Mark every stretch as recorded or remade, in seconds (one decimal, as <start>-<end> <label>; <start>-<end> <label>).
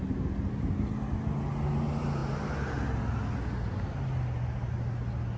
0.0-5.4 recorded